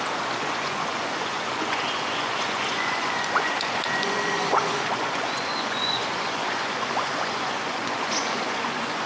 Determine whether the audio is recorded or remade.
remade